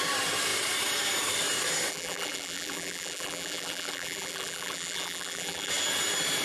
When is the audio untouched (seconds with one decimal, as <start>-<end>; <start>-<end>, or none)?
0.0-1.9; 5.7-6.4